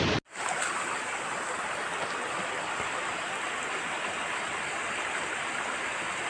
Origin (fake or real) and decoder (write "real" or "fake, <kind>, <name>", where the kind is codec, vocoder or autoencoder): real